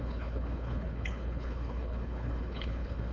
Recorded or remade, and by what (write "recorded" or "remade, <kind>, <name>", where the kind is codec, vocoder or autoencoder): remade, codec, HILCodec